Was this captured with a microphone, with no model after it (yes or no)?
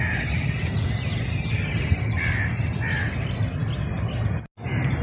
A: yes